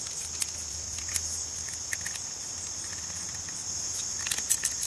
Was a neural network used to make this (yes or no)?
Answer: no